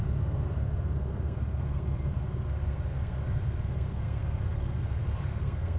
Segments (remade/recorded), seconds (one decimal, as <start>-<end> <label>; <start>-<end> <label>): 0.0-5.8 remade